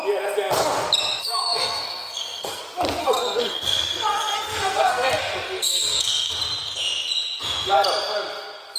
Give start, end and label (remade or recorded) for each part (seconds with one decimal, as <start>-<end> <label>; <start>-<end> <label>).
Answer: 0.0-1.2 recorded; 1.2-2.6 remade; 2.6-3.0 recorded; 3.0-6.4 remade; 6.4-8.8 recorded